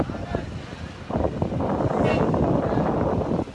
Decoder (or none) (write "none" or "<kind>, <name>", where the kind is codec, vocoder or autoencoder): none